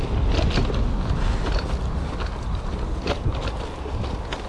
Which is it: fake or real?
real